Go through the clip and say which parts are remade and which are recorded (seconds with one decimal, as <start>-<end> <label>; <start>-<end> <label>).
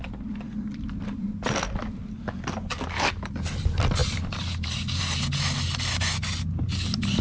0.0-7.2 recorded